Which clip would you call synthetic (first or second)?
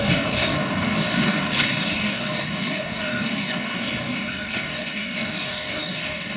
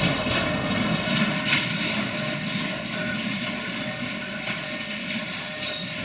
first